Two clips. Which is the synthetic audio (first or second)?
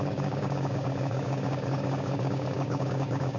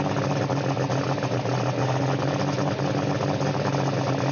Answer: first